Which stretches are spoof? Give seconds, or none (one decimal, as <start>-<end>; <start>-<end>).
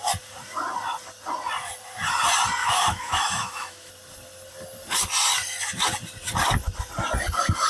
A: 2.6-3.9